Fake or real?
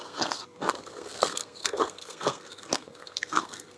fake